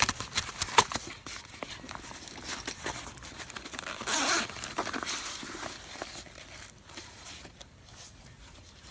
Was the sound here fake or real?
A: fake